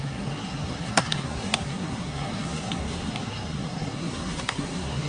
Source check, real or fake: fake